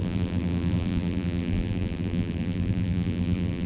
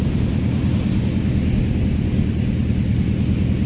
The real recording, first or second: second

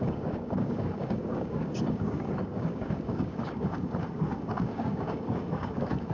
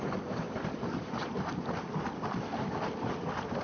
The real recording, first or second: second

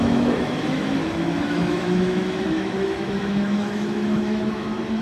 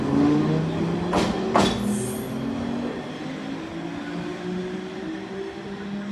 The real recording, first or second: second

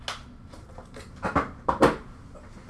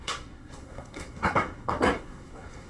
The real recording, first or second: first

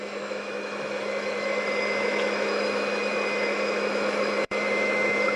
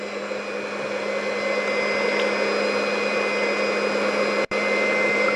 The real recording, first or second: second